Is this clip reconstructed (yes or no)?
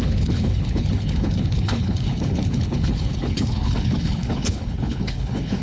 yes